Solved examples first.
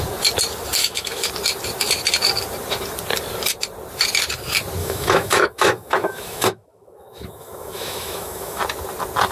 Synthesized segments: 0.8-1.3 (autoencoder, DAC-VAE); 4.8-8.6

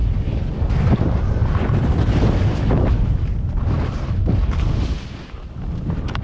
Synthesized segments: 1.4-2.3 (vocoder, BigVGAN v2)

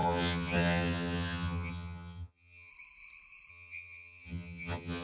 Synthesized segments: 0.0-2.7 (vocoder, HiFi-GAN); 3.5-5.0

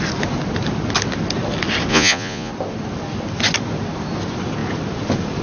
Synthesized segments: 1.9-2.5 (vocoder, Vocos)

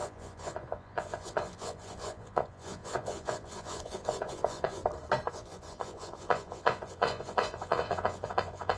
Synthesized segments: 0.0-4.8 (vocoder, Vocos); 5.3-8.8

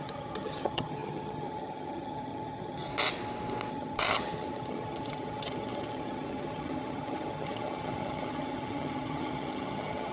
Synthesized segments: 0.0-2.9 (vocoder, HiFi-GAN); 3.7-10.1